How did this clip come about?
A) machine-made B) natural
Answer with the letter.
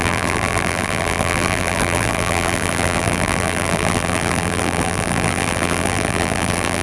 A